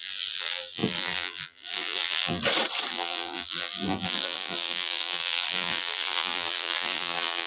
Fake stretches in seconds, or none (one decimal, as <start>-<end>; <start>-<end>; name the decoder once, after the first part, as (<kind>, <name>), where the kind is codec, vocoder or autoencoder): 0.0-2.4 (vocoder, BigVGAN v2); 2.9-7.5